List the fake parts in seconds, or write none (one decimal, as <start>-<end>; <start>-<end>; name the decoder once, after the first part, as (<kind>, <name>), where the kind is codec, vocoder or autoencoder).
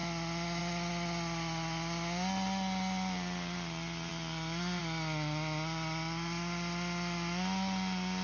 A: none